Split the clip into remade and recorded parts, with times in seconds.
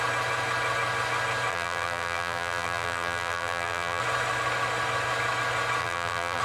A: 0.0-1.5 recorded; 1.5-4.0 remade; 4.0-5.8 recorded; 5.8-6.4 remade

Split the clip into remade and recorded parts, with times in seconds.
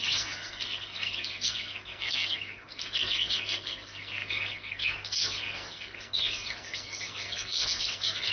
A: 0.0-8.3 remade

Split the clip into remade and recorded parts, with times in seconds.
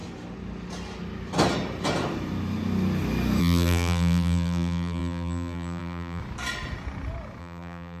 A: 0.0-3.4 recorded; 3.4-6.2 remade; 6.2-7.4 recorded; 7.4-8.0 remade